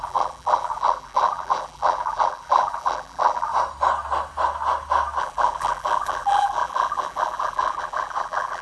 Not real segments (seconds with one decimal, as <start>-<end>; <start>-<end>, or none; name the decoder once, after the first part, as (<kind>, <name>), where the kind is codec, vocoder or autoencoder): 0.0-3.5 (vocoder, BigVGAN v2); 5.2-8.6